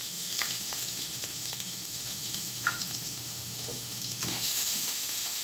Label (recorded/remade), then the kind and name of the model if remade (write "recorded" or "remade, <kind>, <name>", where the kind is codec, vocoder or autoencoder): remade, autoencoder, DAC-VAE